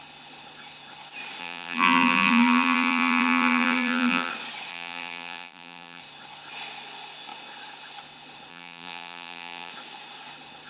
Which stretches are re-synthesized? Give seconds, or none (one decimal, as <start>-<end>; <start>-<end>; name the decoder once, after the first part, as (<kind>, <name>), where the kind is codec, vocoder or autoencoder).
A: 1.4-4.3 (vocoder, BigVGAN v2); 4.7-6.0; 8.5-9.7